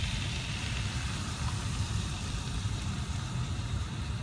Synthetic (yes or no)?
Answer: yes